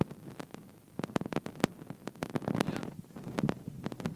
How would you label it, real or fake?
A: real